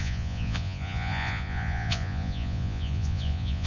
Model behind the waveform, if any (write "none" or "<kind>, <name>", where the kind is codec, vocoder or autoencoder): vocoder, Vocos